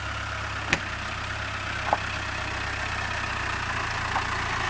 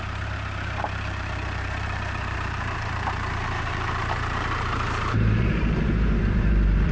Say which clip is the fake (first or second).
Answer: second